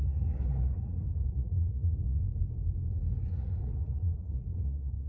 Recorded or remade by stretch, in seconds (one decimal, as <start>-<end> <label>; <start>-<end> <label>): 0.0-2.2 remade; 2.2-3.3 recorded; 3.3-5.1 remade